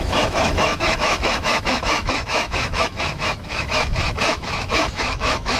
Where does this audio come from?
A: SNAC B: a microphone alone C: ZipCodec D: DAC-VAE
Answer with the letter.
D